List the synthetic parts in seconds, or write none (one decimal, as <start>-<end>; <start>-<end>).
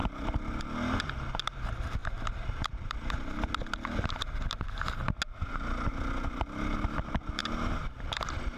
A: 0.0-0.6; 2.0-3.5; 7.4-8.2